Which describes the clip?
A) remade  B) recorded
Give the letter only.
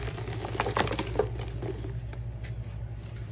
B